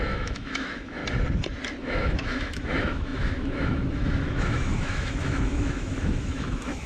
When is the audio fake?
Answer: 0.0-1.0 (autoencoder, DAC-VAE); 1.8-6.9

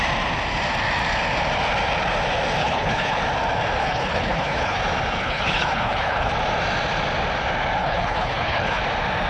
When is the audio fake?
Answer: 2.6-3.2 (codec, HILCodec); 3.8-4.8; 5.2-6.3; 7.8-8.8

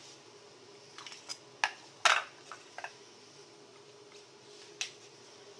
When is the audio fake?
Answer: none